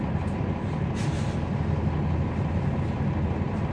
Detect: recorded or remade recorded